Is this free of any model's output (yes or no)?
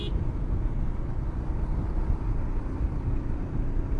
yes